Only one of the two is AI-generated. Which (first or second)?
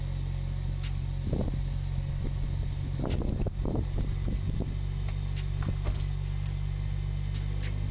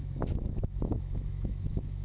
second